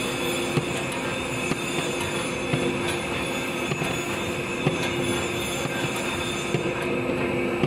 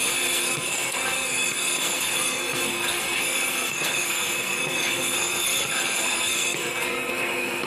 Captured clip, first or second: first